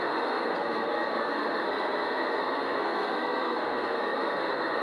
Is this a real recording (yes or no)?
no